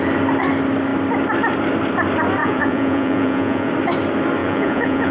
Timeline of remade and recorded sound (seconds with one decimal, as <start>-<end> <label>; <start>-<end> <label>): 0.0-2.4 recorded; 2.4-3.7 remade; 3.7-4.4 recorded; 4.4-5.1 remade